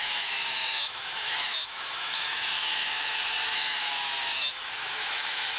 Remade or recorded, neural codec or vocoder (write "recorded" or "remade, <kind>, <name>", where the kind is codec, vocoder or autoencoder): remade, autoencoder, DAC-VAE